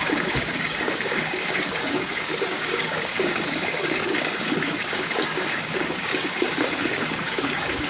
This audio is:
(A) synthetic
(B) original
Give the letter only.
A